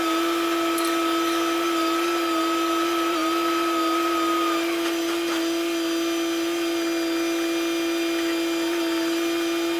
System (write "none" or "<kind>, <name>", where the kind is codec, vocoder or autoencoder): none